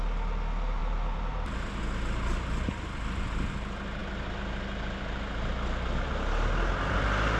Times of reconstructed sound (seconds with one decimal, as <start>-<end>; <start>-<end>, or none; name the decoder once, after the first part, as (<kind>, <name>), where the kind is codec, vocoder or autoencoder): 0.8-1.8 (vocoder, BigVGAN v2)